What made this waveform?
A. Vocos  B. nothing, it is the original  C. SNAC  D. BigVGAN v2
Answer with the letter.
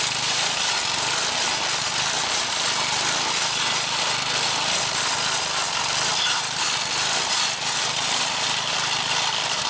D